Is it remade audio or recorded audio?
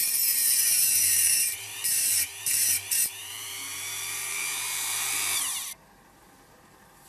remade